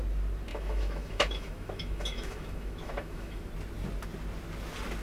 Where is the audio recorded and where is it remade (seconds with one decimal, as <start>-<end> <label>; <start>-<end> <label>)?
0.0-0.5 recorded; 0.5-3.5 remade; 3.5-5.0 recorded